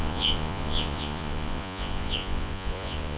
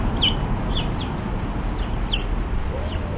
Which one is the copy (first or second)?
first